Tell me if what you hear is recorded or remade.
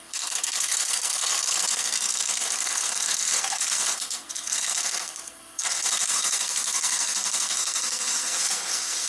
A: remade